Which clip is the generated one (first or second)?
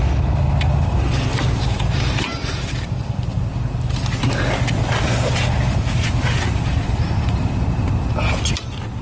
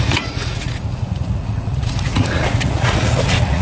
second